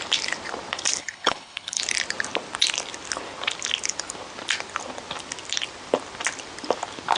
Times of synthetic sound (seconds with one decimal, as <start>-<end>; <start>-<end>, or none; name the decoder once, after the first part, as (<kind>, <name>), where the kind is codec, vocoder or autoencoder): 1.0-1.8 (codec, HILCodec)